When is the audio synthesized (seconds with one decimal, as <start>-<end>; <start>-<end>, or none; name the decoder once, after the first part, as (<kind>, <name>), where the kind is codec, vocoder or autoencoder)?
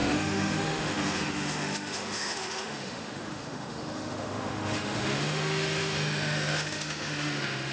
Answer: 0.0-7.7 (autoencoder, DAC-VAE)